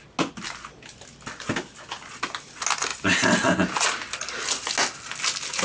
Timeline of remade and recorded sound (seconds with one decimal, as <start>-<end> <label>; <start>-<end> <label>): 0.0-5.6 recorded